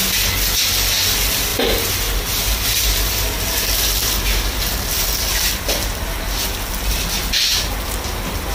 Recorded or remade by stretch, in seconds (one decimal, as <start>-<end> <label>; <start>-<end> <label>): 0.0-1.5 recorded; 1.5-5.2 remade; 5.2-8.5 recorded